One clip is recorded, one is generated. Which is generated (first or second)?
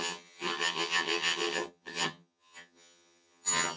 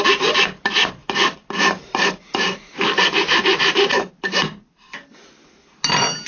first